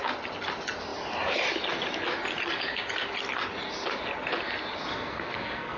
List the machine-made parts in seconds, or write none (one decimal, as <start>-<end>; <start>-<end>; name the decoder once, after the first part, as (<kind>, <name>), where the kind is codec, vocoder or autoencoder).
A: 4.9-5.8 (codec, SNAC)